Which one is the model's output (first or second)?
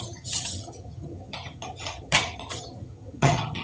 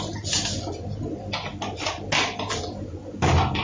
first